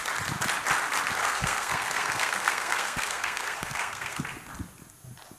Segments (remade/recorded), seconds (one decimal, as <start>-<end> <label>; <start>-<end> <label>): 0.0-1.2 recorded; 1.2-4.2 remade; 4.2-5.4 recorded